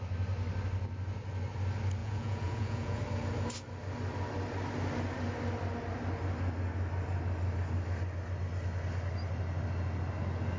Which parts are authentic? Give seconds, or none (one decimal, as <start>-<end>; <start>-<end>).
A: 0.0-2.0; 3.0-10.6